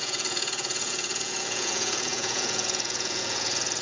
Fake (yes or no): yes